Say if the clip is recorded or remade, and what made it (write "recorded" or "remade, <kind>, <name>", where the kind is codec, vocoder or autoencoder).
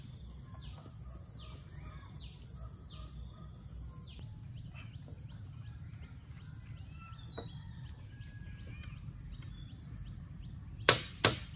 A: recorded